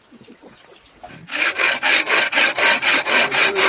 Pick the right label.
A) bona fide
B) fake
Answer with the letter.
A